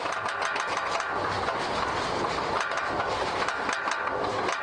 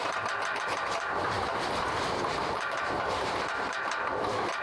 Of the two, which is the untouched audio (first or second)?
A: first